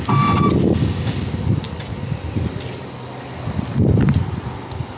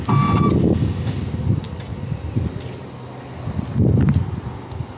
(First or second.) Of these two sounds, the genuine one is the second